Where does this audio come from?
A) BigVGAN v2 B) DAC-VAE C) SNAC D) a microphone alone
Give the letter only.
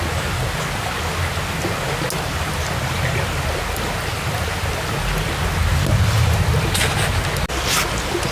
D